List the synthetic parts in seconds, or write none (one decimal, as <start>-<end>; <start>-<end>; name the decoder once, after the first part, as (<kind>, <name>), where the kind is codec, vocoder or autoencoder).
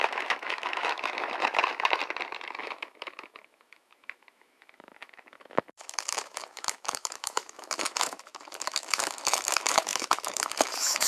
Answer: 0.0-2.0 (autoencoder, DAC-VAE); 2.6-11.1